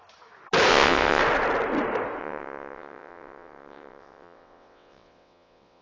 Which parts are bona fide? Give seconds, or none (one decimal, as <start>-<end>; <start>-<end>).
0.0-0.7; 1.2-2.2